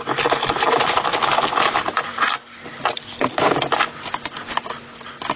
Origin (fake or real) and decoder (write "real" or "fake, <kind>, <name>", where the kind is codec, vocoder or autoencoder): real